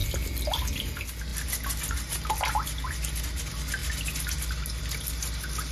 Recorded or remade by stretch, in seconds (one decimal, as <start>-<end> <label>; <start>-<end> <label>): 0.0-5.7 recorded